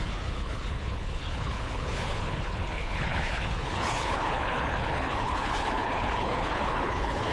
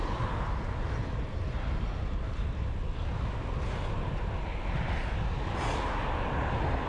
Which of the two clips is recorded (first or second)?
second